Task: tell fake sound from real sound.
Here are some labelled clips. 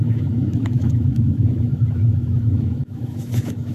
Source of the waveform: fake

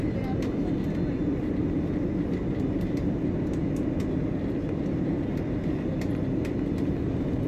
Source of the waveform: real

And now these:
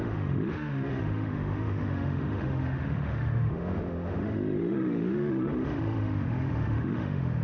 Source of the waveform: fake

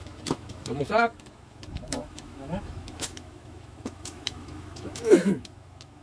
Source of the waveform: fake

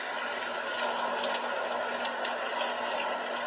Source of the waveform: real